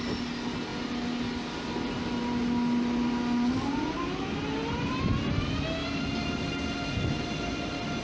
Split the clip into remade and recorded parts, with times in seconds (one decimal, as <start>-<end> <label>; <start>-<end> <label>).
0.0-8.0 recorded